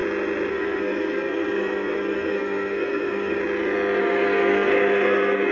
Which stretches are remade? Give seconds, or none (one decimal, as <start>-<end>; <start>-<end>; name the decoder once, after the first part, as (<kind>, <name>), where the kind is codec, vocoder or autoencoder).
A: 0.5-3.4 (codec, SNAC); 4.0-5.5